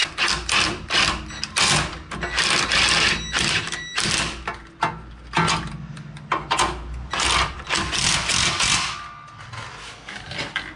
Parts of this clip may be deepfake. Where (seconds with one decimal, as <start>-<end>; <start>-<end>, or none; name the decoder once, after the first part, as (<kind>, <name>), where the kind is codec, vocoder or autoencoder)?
none